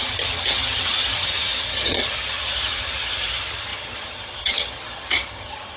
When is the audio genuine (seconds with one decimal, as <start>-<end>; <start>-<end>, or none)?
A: none